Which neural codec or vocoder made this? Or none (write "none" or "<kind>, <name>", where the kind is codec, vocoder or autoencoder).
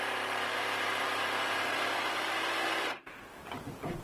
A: vocoder, BigVGAN v2